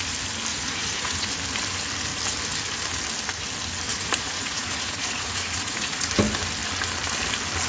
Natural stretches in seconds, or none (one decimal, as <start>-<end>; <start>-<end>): 0.0-0.5; 1.3-3.9; 6.1-7.7